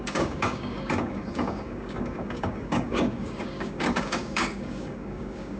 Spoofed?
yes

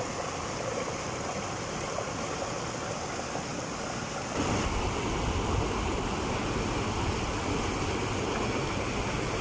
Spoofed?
no